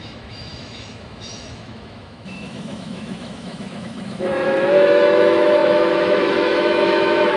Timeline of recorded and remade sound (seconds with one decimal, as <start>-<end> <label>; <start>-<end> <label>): 0.0-7.4 remade